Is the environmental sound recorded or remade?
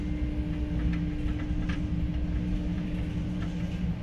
recorded